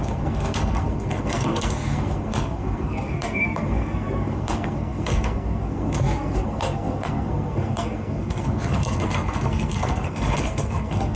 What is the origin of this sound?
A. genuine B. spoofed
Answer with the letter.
B